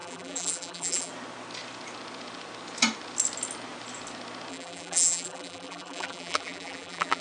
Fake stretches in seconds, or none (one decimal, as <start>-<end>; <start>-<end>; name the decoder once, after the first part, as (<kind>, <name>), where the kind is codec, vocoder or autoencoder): 0.0-1.1 (vocoder, BigVGAN v2); 4.5-7.2